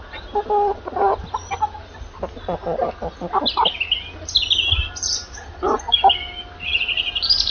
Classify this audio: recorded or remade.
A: recorded